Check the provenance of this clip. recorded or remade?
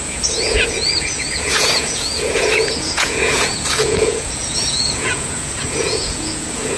remade